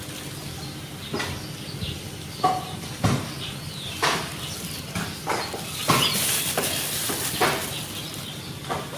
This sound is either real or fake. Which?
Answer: real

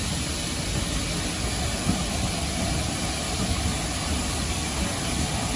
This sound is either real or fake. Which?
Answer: real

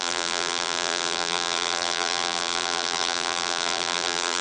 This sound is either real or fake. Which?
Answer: fake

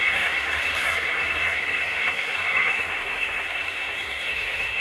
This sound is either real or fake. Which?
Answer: fake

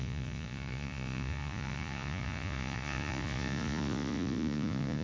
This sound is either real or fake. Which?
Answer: fake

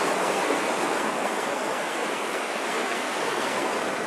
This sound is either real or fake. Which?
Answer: fake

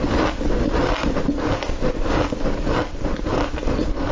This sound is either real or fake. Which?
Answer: real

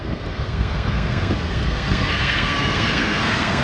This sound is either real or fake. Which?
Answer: fake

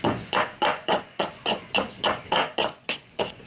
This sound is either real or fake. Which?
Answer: fake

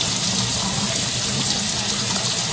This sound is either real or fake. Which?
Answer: real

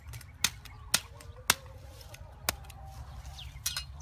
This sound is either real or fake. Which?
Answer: real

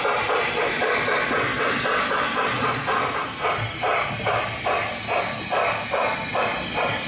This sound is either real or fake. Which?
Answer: real